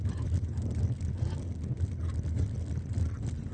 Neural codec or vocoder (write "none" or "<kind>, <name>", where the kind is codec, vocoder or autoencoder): none